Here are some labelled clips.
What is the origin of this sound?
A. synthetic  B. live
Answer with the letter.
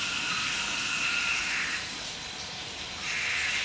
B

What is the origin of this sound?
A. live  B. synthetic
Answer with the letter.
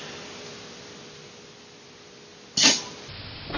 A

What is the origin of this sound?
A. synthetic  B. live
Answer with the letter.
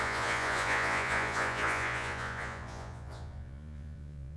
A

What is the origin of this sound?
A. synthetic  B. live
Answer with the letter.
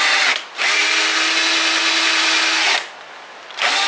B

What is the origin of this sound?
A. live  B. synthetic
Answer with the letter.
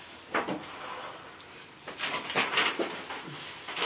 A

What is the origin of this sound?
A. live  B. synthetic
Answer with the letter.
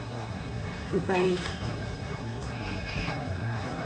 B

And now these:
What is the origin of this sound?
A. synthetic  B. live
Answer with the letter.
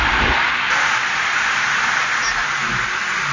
B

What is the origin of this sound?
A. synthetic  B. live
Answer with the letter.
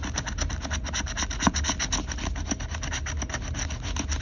B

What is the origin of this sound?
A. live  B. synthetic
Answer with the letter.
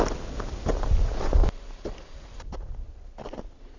A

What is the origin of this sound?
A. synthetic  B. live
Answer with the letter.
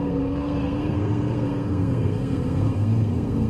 A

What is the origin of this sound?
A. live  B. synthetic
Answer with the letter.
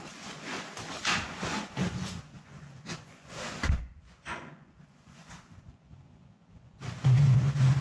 B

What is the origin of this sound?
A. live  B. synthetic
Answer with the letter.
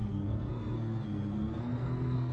B